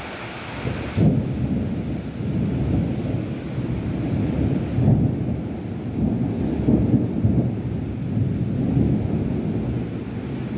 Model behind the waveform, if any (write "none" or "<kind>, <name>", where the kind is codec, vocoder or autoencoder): none